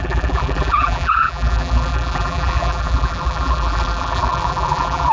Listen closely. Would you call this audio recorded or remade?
remade